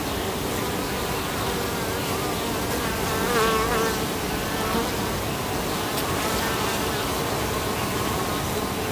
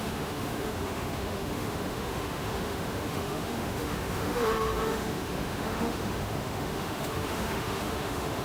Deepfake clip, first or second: second